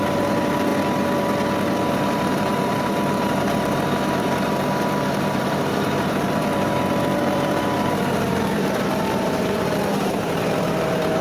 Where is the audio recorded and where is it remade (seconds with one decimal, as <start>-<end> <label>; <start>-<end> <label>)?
0.0-0.7 remade; 0.7-1.9 recorded; 1.9-11.2 remade